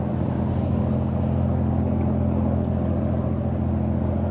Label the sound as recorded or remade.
recorded